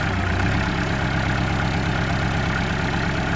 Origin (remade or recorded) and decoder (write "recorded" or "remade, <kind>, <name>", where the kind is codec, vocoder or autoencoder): recorded